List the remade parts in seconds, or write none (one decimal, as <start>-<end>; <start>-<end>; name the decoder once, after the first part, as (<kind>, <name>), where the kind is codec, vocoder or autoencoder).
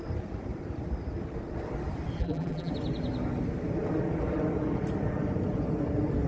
2.2-2.7 (vocoder, BigVGAN v2)